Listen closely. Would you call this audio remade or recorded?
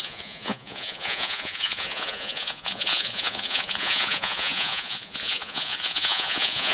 remade